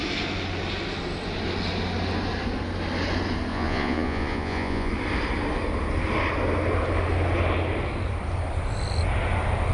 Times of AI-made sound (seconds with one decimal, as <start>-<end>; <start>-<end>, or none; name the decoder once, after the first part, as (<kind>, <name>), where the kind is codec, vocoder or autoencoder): 3.5-4.9 (vocoder, Vocos)